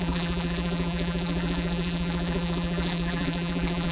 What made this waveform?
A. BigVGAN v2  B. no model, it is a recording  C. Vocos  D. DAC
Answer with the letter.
A